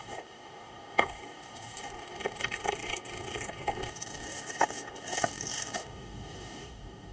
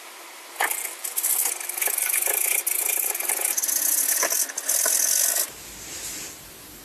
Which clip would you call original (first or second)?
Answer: second